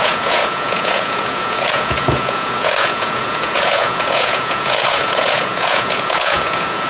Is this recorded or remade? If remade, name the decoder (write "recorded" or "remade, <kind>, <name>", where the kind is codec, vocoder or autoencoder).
remade, vocoder, Vocos